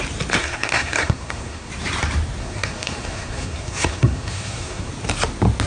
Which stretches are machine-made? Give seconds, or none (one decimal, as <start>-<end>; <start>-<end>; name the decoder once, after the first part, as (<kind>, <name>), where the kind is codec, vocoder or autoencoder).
0.4-1.7 (codec, SNAC); 2.4-4.9